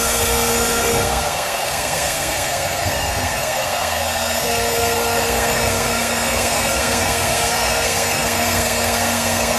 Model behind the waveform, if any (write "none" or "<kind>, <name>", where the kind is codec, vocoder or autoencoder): codec, SNAC